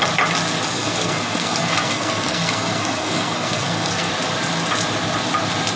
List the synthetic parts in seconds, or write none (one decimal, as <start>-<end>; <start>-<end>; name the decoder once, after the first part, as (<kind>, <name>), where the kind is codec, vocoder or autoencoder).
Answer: 0.6-4.1 (codec, SNAC)